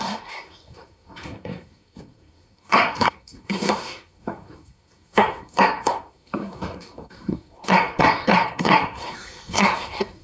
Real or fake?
fake